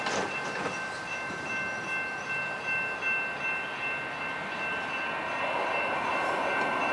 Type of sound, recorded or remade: recorded